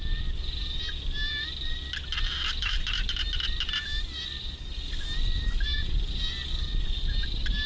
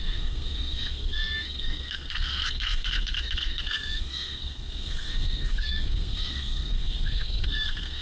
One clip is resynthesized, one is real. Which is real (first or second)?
first